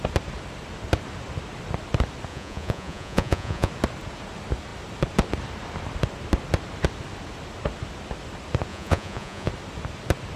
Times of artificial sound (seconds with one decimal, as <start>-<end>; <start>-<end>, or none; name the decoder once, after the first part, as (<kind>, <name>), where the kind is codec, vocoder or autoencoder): 2.3-3.7 (vocoder, Vocos); 8.7-9.5